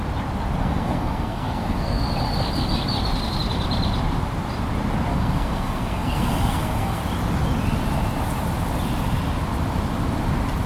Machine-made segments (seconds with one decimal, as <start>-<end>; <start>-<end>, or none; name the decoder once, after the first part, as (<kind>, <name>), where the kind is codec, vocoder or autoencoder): 0.6-2.0 (codec, SNAC); 5.1-7.0